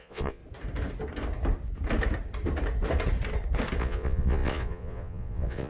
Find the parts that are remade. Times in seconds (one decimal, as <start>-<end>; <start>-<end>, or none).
0.0-0.4; 3.8-5.7